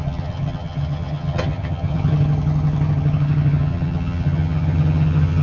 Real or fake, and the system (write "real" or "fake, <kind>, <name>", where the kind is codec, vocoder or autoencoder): fake, vocoder, HiFi-GAN